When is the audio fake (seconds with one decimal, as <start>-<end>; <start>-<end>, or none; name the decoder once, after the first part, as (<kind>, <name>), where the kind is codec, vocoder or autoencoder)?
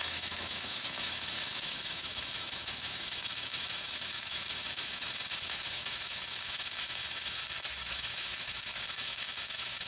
0.0-7.4 (autoencoder, DAC-VAE); 7.9-9.9